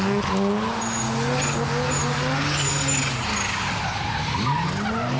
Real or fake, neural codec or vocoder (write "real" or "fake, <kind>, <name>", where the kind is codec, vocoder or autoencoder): real